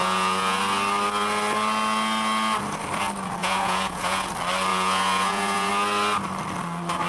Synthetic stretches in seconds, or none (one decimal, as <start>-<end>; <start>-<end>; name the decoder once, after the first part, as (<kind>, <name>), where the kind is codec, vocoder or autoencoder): 0.0-0.6 (vocoder, Vocos); 3.4-4.3; 4.7-5.7